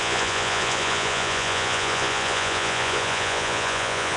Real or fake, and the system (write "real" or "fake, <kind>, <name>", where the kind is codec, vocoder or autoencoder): fake, vocoder, Vocos